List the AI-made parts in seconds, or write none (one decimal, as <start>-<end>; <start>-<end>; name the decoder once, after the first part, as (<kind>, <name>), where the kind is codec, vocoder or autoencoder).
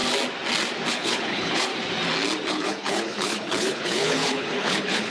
0.9-1.7 (codec, HILCodec); 2.5-5.1